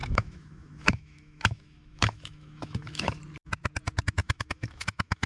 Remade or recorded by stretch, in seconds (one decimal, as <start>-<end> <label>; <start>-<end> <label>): 0.0-3.2 remade; 3.2-4.2 recorded; 4.2-5.3 remade